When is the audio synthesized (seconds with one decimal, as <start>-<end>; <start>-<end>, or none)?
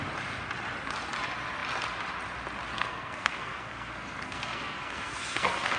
2.8-5.8